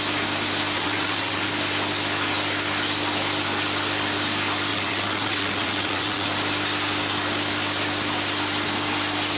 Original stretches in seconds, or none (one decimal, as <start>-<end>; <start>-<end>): 0.0-0.8; 1.5-4.7; 6.3-9.4